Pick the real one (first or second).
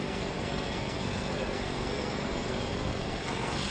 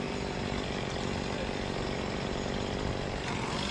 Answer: second